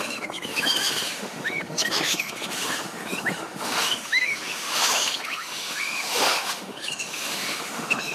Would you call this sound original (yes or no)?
no